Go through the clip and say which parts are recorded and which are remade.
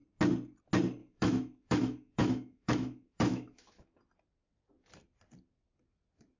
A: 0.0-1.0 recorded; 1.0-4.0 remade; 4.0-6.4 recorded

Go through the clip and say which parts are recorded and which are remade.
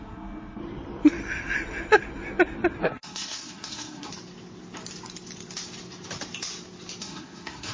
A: 0.0-0.6 remade; 0.6-2.8 recorded; 2.8-4.1 remade; 4.1-7.0 recorded; 7.0-7.7 remade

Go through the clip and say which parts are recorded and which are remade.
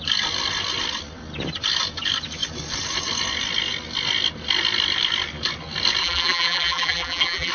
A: 0.0-6.0 recorded; 6.0-7.5 remade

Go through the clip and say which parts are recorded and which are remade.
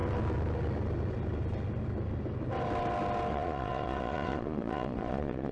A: 0.0-3.3 recorded; 3.3-5.5 remade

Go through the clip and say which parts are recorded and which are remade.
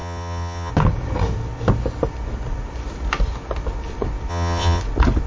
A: 0.0-0.7 remade; 0.7-4.3 recorded; 4.3-4.8 remade; 4.8-5.3 recorded